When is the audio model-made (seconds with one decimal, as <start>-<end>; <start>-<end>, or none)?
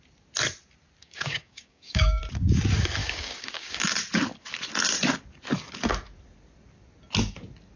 1.0-2.2; 3.0-3.8